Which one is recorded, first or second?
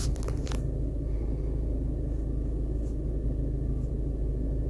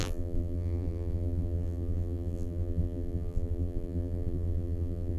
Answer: first